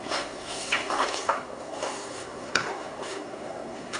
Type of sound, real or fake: fake